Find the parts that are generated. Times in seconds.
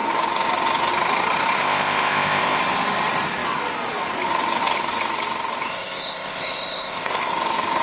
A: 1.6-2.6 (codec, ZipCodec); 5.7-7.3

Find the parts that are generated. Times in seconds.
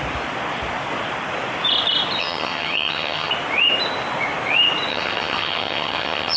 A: 2.2-3.3 (vocoder, HiFi-GAN); 4.9-6.4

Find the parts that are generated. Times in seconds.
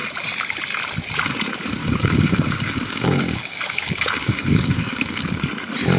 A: 1.8-5.4 (codec, DAC)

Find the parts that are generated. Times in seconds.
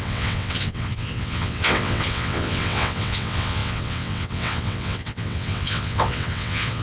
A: 0.0-6.8 (vocoder, WaveNeXt)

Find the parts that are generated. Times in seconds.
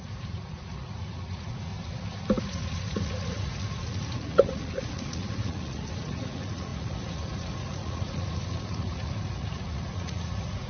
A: 0.0-1.7 (vocoder, Vocos); 2.4-10.7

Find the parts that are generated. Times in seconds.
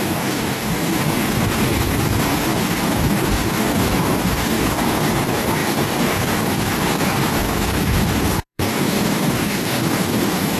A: 0.0-10.6 (codec, DAC)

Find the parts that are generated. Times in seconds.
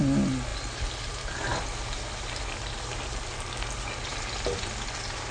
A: none